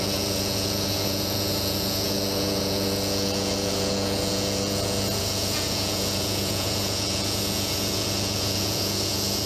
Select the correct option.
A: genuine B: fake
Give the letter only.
B